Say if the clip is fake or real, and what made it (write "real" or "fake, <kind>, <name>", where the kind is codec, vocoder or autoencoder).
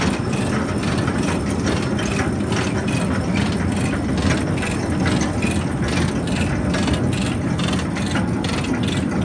real